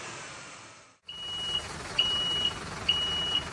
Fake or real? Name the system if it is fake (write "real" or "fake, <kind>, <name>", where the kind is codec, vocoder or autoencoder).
real